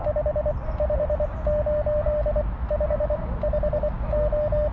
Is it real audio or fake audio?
real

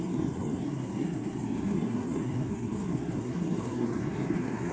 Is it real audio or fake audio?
fake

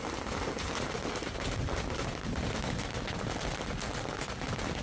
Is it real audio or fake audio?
real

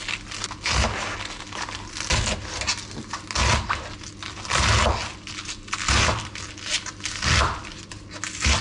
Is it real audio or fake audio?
real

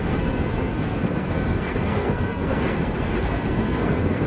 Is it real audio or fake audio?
fake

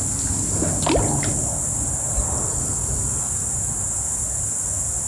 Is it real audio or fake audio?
real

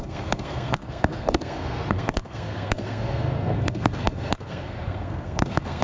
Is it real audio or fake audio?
fake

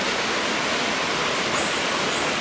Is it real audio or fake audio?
real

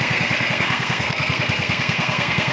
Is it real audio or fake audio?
fake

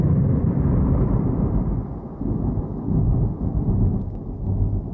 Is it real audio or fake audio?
real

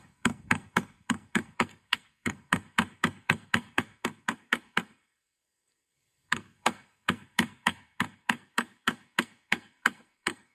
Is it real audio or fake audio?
fake